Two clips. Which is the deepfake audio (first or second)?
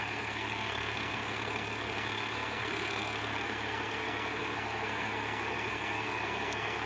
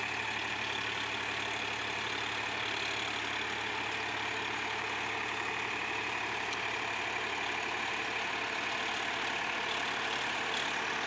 first